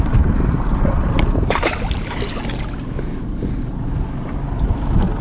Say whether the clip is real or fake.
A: real